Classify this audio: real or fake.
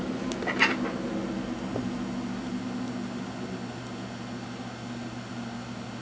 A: real